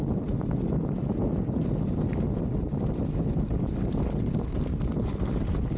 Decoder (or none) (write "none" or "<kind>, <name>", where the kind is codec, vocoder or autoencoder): none